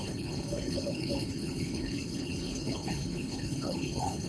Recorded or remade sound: remade